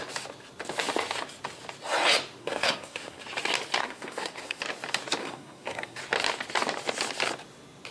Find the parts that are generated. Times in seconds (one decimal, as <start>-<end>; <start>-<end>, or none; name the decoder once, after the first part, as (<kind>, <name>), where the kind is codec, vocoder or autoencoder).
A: 2.4-3.2 (codec, SNAC); 3.8-4.6; 5.2-6.0